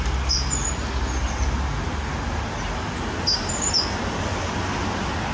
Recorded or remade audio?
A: recorded